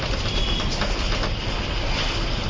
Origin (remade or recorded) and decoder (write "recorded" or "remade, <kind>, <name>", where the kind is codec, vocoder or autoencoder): recorded